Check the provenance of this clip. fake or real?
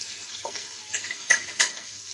fake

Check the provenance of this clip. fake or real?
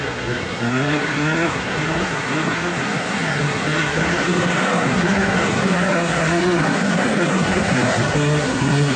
fake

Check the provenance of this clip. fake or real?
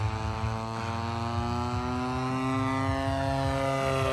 real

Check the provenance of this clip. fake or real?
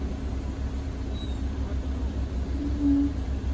real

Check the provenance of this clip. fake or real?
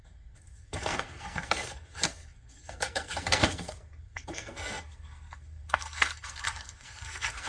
fake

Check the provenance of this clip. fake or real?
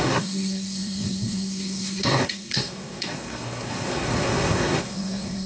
fake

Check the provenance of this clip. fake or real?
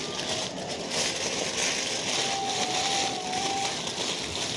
real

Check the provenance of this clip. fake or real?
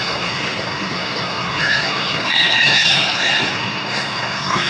fake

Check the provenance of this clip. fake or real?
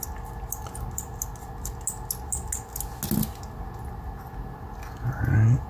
real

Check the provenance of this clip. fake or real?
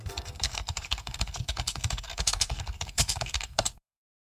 fake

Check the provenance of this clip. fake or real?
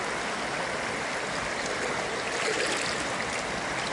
real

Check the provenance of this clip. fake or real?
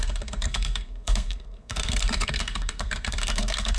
fake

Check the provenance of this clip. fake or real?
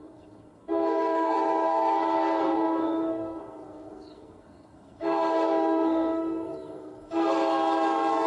fake